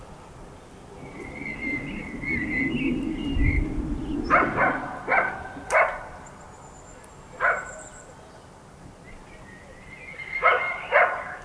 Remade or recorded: recorded